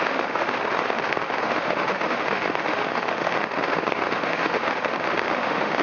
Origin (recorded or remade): remade